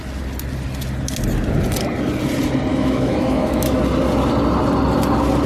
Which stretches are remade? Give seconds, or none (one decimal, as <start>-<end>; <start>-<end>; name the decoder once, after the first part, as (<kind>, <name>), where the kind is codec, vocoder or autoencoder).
2.7-3.8 (autoencoder, DAC-VAE)